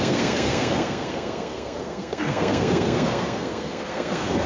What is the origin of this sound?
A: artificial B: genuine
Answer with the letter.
A